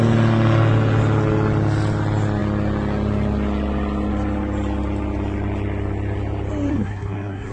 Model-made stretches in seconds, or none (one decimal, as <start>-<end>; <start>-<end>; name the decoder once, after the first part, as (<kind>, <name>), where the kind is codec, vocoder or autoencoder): 6.7-7.5 (codec, SNAC)